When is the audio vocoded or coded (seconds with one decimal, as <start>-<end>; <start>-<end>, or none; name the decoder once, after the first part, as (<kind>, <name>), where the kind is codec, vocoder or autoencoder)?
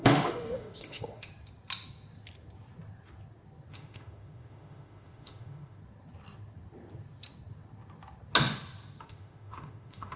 0.0-1.3 (autoencoder, DAC-VAE); 3.7-5.8; 9.0-10.2